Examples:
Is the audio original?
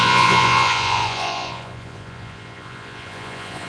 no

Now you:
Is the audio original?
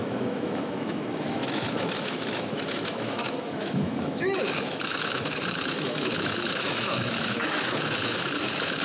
no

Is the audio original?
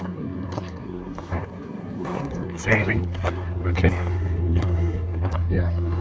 no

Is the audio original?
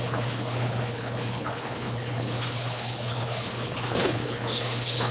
no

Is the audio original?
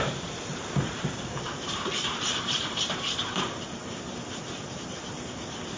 no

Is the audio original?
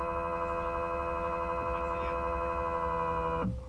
yes